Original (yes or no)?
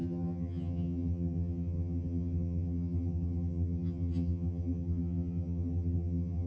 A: no